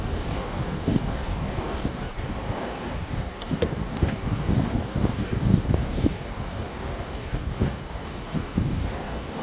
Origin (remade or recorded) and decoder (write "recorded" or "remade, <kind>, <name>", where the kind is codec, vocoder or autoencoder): remade, codec, DAC